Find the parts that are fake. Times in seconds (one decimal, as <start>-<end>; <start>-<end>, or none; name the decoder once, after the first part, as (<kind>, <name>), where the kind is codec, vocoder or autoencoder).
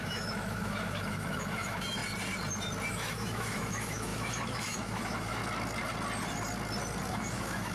0.0-2.0 (autoencoder, DAC-VAE); 2.9-5.4; 7.1-7.7